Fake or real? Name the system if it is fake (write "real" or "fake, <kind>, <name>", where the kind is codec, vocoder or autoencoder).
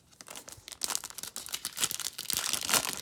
real